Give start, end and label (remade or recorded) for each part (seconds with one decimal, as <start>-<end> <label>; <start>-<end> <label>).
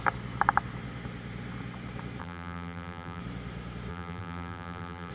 0.0-2.2 recorded; 2.2-3.2 remade; 3.2-3.9 recorded; 3.9-5.1 remade